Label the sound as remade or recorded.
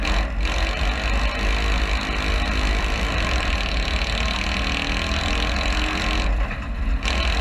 recorded